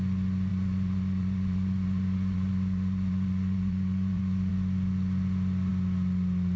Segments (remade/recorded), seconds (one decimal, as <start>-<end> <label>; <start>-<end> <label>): 0.0-0.5 recorded; 0.5-4.5 remade; 4.5-6.6 recorded